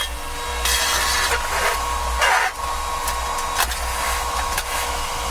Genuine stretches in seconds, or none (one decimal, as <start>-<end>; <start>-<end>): 0.0-3.9